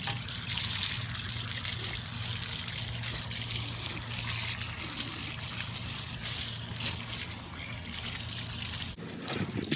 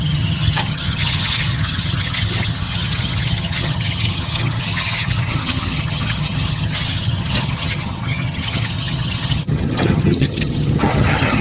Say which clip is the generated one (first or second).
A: second